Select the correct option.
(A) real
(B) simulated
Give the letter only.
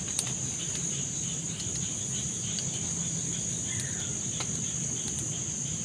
A